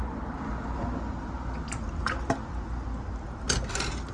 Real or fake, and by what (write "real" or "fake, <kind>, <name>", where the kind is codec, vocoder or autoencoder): real